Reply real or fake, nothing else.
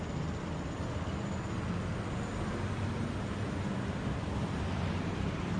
real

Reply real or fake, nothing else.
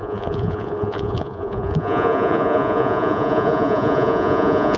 fake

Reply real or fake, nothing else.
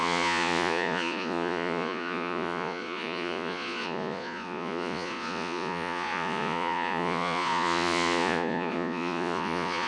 fake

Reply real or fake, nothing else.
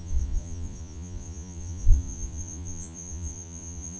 fake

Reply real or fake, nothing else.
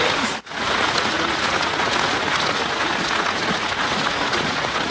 fake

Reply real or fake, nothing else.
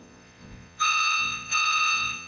fake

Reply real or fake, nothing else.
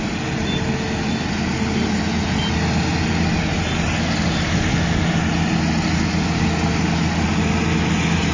real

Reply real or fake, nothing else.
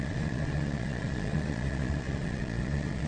fake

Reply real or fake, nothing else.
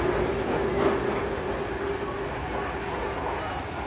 real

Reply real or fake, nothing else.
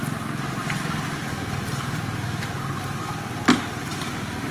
real